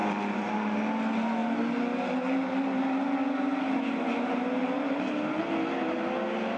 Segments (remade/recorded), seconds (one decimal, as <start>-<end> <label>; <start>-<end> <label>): 0.0-6.6 recorded